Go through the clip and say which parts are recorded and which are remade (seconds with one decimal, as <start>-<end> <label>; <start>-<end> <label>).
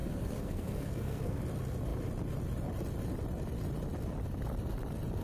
0.0-1.4 remade; 1.4-5.2 recorded